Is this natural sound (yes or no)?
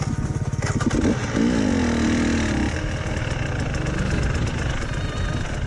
yes